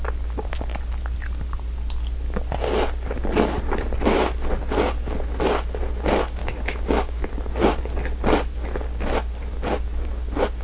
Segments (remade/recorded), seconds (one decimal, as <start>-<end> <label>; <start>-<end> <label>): 0.0-6.4 recorded; 6.4-7.3 remade; 7.3-10.6 recorded